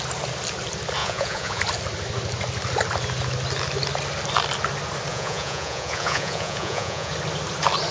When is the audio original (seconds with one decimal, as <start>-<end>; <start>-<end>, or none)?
0.0-1.0; 1.6-5.1; 7.1-7.9